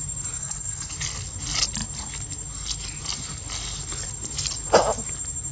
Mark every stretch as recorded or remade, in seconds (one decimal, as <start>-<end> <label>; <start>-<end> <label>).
0.0-0.4 recorded; 0.4-0.9 remade; 0.9-5.5 recorded